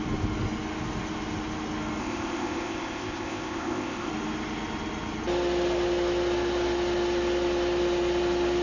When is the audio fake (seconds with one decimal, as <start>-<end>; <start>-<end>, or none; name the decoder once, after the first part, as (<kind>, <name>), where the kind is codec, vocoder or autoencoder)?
2.0-4.1 (codec, ZipCodec)